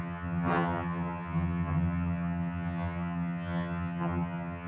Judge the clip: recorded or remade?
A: remade